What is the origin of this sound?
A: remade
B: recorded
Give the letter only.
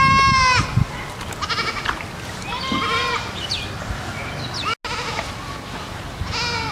B